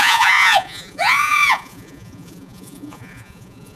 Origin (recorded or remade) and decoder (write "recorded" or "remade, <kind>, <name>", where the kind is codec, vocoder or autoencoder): remade, vocoder, Vocos